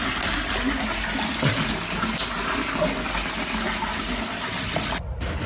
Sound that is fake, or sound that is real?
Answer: real